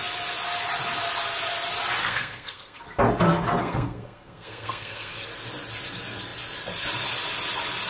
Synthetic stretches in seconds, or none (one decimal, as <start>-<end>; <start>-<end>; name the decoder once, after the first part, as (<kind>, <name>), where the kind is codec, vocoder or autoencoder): 2.0-2.8 (codec, SNAC); 3.6-5.3